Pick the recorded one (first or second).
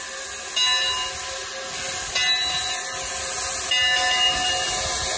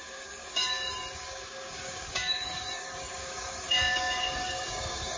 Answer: first